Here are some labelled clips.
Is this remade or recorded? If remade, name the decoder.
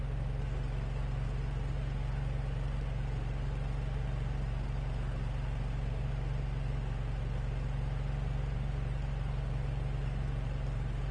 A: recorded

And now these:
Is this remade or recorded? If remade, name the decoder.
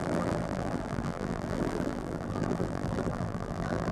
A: remade, vocoder, BigVGAN v2